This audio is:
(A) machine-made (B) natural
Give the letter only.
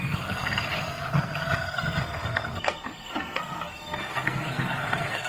A